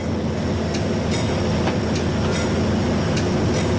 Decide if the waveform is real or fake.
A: real